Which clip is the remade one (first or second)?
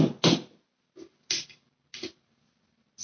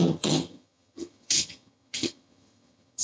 second